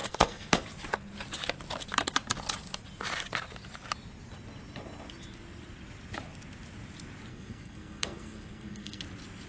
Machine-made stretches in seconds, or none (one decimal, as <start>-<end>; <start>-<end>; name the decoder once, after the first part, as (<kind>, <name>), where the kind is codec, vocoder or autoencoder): 0.0-0.6 (codec, SNAC); 7.3-9.0